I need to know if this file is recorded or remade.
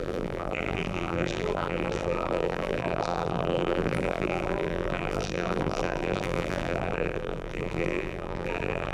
remade